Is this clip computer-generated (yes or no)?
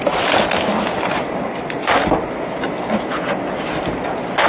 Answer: no